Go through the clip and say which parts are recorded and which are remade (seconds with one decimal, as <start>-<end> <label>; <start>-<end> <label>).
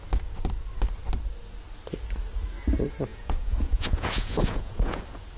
0.0-3.1 recorded; 3.1-5.0 remade; 5.0-5.4 recorded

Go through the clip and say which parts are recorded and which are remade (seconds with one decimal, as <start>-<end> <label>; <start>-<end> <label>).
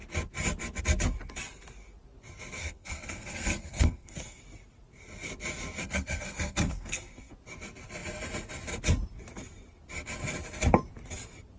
0.0-2.6 recorded; 2.6-4.4 remade; 4.4-5.8 recorded; 5.8-7.3 remade; 7.3-11.6 recorded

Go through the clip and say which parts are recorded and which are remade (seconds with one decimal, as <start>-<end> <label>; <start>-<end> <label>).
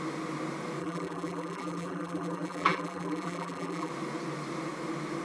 0.0-0.8 recorded; 0.8-3.9 remade; 3.9-5.2 recorded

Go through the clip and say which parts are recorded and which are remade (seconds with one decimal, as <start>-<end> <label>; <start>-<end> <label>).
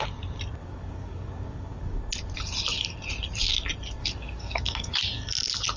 0.0-0.6 recorded; 0.6-2.0 remade; 2.0-4.0 recorded; 4.0-5.0 remade; 5.0-5.8 recorded